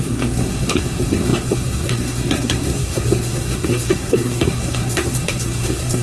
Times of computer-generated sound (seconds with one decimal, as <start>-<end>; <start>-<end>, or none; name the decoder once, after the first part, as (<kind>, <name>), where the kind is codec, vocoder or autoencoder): 0.0-6.0 (codec, SNAC)

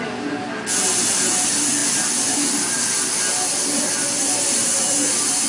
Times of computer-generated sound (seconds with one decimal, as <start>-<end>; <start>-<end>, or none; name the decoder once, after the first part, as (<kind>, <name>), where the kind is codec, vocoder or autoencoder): none

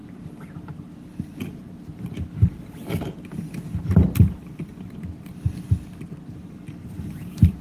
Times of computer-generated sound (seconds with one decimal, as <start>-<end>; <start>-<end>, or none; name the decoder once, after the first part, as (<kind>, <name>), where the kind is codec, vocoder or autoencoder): none

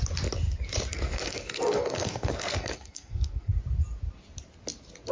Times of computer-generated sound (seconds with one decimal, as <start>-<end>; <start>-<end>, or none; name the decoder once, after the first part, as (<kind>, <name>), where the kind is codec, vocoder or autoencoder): 0.9-3.5 (codec, SNAC)

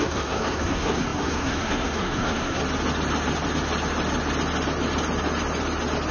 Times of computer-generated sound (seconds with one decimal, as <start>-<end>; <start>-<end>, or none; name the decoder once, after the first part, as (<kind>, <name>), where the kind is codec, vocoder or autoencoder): 0.0-2.6 (codec, SNAC)